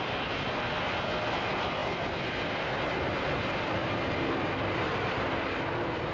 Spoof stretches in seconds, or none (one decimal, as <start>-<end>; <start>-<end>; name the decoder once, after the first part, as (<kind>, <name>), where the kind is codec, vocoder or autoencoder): none